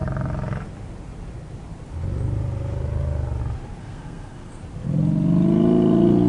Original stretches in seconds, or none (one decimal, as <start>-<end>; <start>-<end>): 0.0-3.8; 4.6-6.3